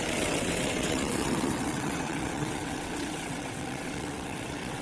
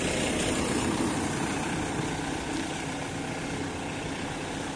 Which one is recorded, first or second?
second